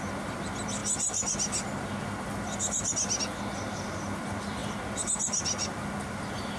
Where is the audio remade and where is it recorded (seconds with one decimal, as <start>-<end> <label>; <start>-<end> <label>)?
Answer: 0.0-6.6 recorded